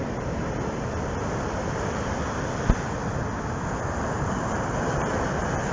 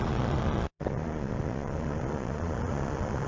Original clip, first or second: first